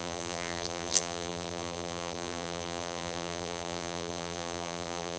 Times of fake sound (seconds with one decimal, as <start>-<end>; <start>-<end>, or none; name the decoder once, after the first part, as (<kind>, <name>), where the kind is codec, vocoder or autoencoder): 0.0-5.2 (vocoder, BigVGAN v2)